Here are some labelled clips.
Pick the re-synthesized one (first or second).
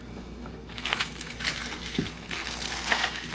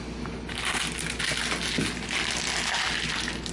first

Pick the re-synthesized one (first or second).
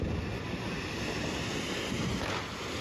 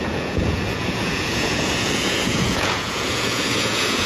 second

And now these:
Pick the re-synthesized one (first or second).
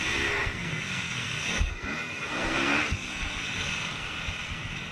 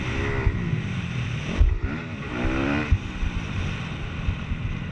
first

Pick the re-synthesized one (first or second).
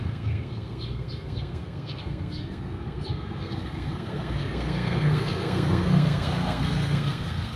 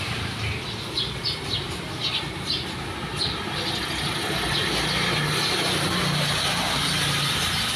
first